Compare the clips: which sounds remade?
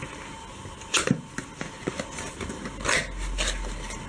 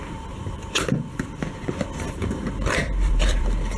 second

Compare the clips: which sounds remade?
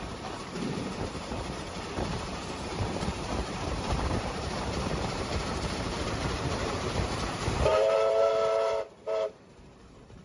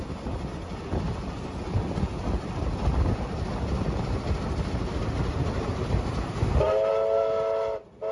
first